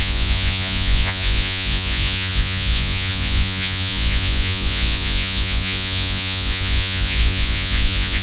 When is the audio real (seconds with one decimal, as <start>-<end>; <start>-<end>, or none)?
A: none